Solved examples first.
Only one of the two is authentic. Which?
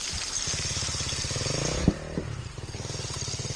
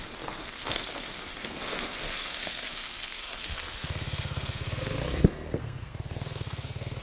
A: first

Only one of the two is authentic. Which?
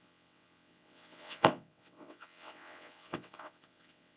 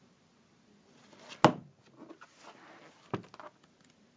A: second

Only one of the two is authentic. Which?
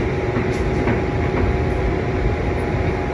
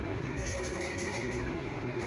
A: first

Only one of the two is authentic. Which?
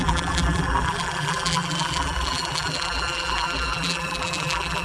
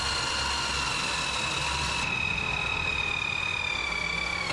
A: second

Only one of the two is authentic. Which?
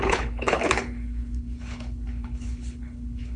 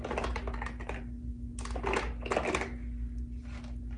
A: second